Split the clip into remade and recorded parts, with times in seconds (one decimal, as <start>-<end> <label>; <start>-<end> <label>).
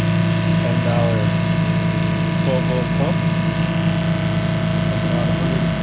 0.0-5.8 recorded